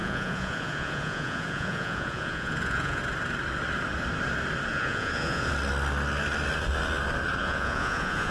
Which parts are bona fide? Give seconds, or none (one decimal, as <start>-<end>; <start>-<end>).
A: 3.0-4.7; 5.5-7.4